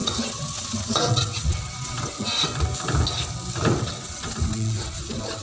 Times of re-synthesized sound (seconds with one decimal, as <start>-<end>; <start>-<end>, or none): 0.0-2.5; 3.8-5.4